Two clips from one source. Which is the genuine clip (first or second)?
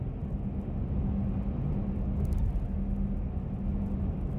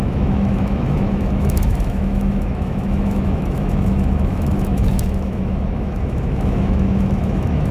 first